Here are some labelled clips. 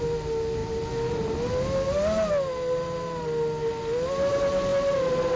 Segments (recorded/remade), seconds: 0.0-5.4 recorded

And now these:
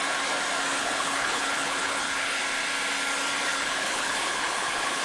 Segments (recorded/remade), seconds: 0.0-0.8 recorded; 0.8-2.4 remade; 2.4-3.5 recorded; 3.5-5.0 remade

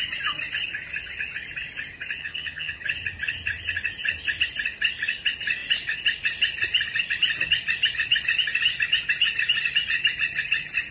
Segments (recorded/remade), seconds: 0.0-2.2 recorded; 2.2-2.8 remade; 2.8-10.9 recorded

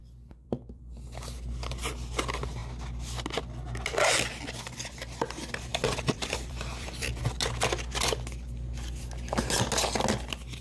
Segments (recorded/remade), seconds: 0.0-0.8 remade; 0.8-5.7 recorded; 5.7-7.2 remade; 7.2-10.6 recorded